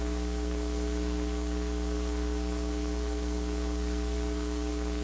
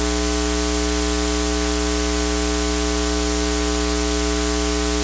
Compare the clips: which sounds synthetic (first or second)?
first